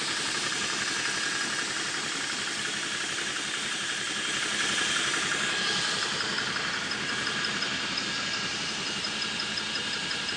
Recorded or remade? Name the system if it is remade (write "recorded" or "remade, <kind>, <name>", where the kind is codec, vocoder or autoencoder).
remade, vocoder, BigVGAN v2